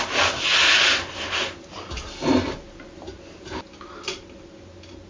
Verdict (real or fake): real